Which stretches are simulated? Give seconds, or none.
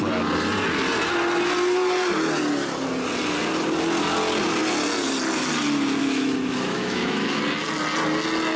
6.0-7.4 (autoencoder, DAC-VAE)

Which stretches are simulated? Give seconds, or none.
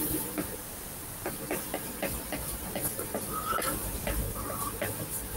0.0-5.4 (vocoder, BigVGAN v2)